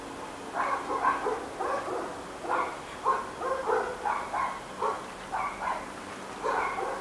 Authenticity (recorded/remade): recorded